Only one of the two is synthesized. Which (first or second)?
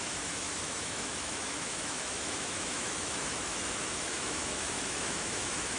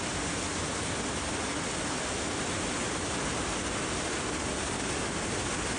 first